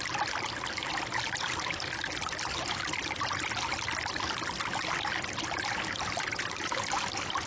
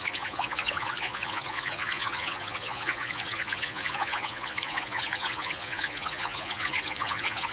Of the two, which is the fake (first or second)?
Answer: second